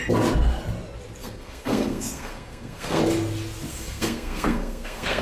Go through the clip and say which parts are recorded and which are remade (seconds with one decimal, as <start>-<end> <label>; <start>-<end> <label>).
0.0-1.2 recorded; 1.2-3.0 remade; 3.0-3.7 recorded; 3.7-5.2 remade